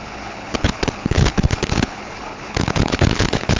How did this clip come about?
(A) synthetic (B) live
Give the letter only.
A